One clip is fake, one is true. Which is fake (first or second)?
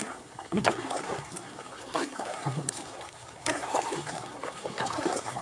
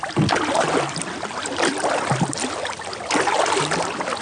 first